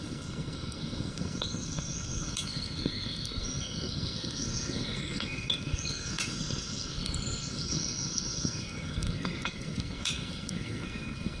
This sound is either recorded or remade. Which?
remade